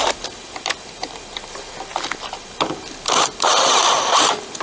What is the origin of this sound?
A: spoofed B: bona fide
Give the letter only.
B